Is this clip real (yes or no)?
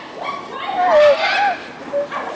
yes